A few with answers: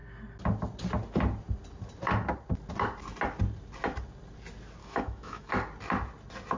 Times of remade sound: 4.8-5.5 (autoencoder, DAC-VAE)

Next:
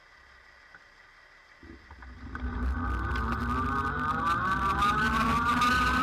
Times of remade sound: none

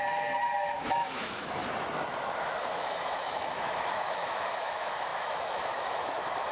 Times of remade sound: 0.0-1.6 (autoencoder, DAC-VAE); 2.2-6.5

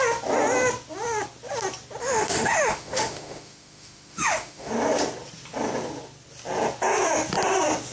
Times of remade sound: 2.0-4.7 (autoencoder, DAC-VAE)

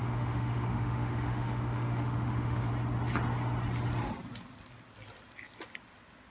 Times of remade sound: 0.0-2.7 (autoencoder, DAC-VAE)

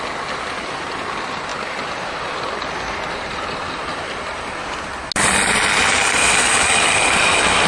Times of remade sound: none

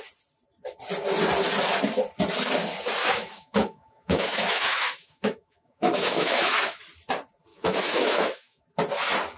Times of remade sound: 3.0-6.8 (autoencoder, DAC-VAE); 7.5-8.6

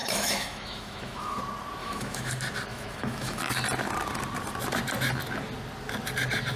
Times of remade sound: 0.0-1.4 (autoencoder, DAC-VAE); 1.8-2.3; 2.7-3.4